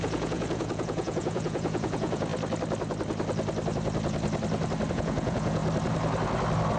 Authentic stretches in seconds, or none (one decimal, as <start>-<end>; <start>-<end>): 2.3-4.9; 5.6-6.8